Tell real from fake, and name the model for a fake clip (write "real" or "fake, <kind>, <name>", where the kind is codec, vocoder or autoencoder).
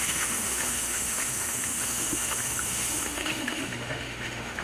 fake, autoencoder, DAC-VAE